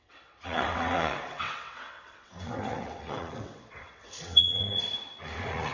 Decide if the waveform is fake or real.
fake